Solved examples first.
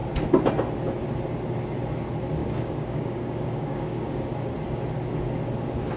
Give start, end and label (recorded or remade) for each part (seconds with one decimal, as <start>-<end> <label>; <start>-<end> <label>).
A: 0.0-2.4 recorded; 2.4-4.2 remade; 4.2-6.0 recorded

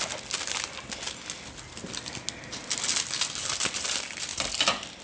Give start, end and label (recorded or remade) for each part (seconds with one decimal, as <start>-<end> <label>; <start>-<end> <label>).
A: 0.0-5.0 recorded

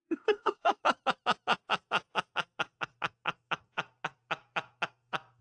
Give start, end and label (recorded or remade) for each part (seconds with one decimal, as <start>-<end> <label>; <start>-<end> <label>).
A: 0.0-0.8 remade; 0.8-5.4 recorded

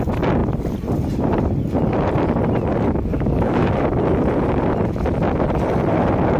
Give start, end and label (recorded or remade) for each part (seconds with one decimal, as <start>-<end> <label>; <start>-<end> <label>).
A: 0.0-3.1 recorded; 3.1-3.7 remade; 3.7-6.4 recorded

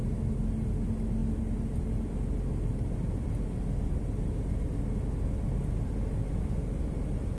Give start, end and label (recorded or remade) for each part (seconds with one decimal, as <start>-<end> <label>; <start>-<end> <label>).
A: 0.0-7.4 recorded

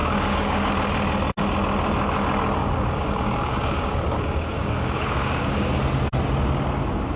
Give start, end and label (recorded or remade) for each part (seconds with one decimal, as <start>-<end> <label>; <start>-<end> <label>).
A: 0.0-0.7 remade; 0.7-2.6 recorded; 2.6-5.7 remade; 5.7-7.2 recorded

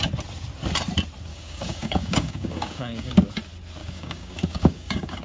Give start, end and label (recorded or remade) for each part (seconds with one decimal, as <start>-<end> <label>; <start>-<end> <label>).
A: 0.0-1.3 recorded; 1.3-3.1 remade; 3.1-3.8 recorded; 3.8-5.2 remade